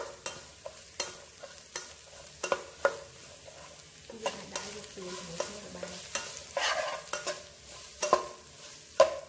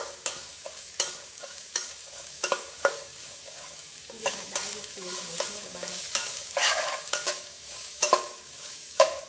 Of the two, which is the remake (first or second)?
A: second